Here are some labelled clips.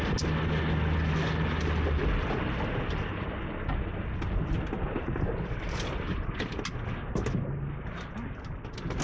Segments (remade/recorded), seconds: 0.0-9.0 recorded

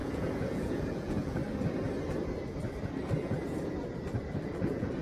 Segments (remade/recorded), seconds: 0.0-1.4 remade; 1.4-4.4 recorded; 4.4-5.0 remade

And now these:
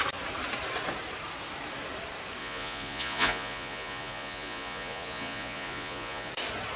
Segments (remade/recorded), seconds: 0.0-2.4 recorded; 2.4-6.3 remade; 6.3-6.8 recorded

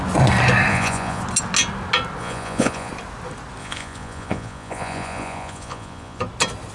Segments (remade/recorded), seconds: 0.0-0.7 recorded; 0.7-1.2 remade; 1.2-2.2 recorded; 2.2-2.9 remade; 2.9-3.6 recorded; 3.6-6.2 remade; 6.2-6.7 recorded

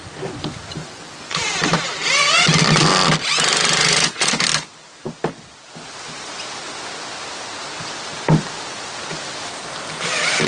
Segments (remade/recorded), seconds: 0.0-0.8 recorded; 0.8-1.4 remade; 1.4-3.8 recorded; 3.8-4.4 remade; 4.4-10.5 recorded

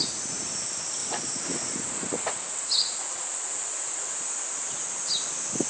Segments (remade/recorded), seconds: 0.0-0.5 remade; 0.5-1.0 recorded; 1.0-4.4 remade; 4.4-5.7 recorded